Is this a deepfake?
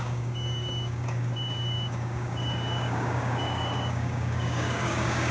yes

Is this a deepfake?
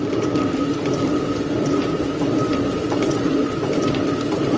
no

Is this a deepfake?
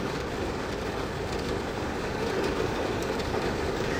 yes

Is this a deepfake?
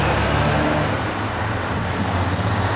no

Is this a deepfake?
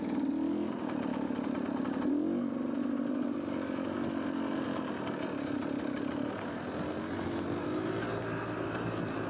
no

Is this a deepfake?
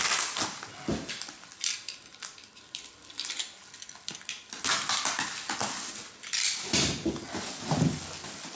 no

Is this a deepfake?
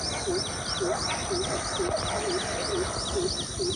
no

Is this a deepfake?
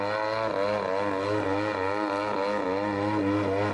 no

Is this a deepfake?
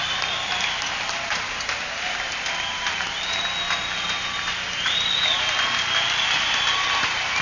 no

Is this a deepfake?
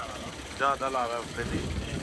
yes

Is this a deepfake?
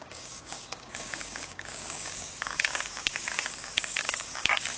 yes